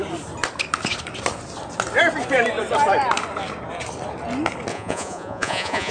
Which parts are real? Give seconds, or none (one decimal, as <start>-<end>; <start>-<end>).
0.0-4.7